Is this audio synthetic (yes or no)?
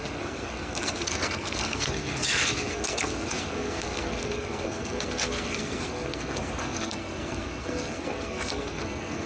yes